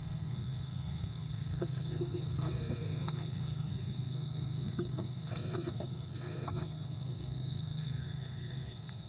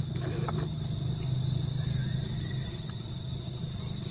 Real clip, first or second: second